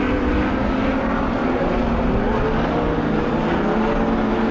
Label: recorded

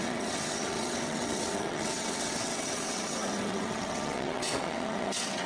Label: remade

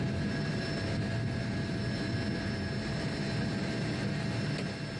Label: recorded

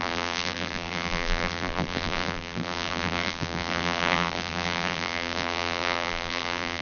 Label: remade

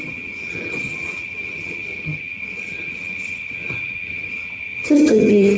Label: remade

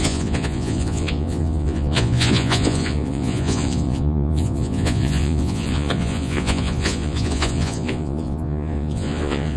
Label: remade